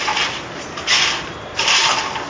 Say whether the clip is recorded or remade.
recorded